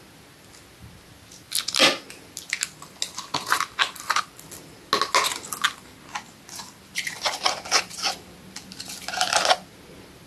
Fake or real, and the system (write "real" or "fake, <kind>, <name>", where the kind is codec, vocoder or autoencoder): real